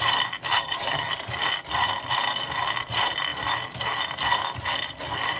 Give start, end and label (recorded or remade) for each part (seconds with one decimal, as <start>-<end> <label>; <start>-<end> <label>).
0.0-0.5 recorded; 0.5-1.1 remade; 1.1-5.4 recorded